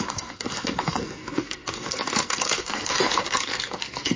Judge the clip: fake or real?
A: fake